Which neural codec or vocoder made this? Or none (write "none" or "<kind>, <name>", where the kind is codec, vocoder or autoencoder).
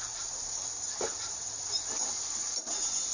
none